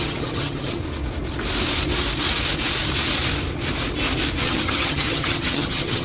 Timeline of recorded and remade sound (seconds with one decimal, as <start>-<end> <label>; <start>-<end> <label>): 0.0-0.8 remade; 0.8-4.4 recorded; 4.4-6.0 remade